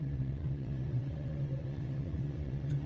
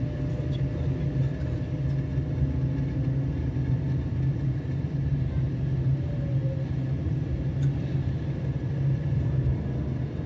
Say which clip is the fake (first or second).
first